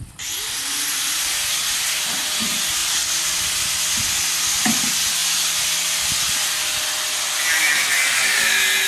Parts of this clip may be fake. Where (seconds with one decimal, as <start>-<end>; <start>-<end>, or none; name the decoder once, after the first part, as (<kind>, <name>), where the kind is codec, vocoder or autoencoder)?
none

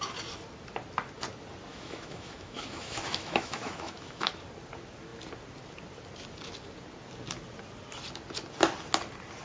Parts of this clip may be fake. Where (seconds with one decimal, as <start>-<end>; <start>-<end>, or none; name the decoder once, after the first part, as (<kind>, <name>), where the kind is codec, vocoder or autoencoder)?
1.7-4.3 (autoencoder, DAC-VAE)

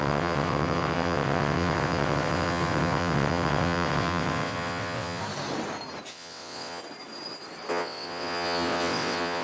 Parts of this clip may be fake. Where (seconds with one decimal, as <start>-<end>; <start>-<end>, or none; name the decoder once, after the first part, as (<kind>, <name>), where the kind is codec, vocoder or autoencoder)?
0.0-5.2 (vocoder, WaveNeXt); 6.1-6.8; 7.7-9.4

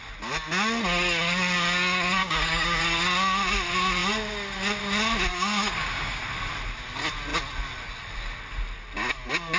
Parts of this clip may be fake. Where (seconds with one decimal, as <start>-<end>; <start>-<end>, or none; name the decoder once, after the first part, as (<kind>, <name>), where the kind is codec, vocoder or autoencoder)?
2.2-2.8 (codec, DAC); 5.3-6.2

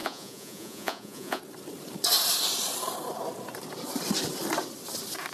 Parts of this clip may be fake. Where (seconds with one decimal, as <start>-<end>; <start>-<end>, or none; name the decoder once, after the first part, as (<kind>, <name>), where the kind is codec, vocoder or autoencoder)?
0.0-1.4 (vocoder, Vocos)

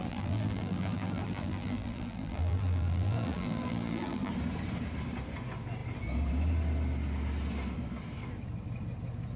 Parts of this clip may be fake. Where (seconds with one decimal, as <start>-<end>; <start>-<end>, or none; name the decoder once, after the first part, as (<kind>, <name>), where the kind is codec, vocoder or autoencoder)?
0.0-4.3 (vocoder, BigVGAN v2)

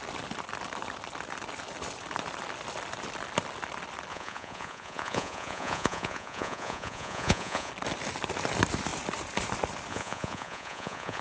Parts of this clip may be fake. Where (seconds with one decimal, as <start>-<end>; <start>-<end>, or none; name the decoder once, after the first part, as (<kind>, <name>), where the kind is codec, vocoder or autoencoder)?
4.1-7.7 (vocoder, Vocos); 9.9-11.2

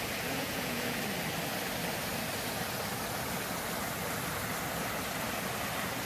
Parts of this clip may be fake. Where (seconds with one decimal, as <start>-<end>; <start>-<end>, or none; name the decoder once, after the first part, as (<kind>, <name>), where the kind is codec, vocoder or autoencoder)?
0.4-1.0 (vocoder, Vocos)